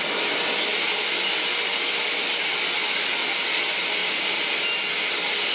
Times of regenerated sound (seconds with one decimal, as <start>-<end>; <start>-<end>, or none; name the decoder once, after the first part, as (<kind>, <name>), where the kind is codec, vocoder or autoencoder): 4.0-4.6 (vocoder, BigVGAN v2)